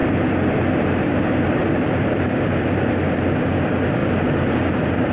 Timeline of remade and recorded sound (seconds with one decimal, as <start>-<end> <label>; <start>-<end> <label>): 0.0-1.6 recorded; 1.6-2.8 remade; 2.8-4.0 recorded; 4.0-5.1 remade